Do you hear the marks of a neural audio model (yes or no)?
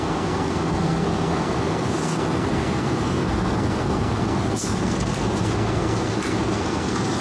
yes